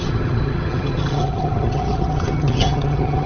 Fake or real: fake